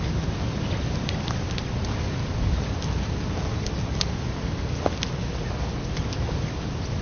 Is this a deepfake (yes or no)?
no